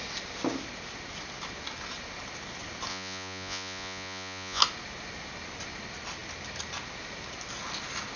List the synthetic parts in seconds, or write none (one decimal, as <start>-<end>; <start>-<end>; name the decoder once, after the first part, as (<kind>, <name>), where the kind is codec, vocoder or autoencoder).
2.9-4.6 (vocoder, Vocos)